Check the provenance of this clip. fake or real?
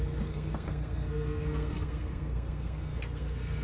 fake